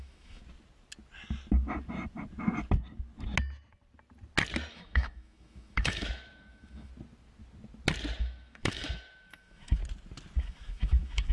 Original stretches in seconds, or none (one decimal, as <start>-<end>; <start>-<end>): 0.4-4.7; 6.9-8.2; 9.8-10.4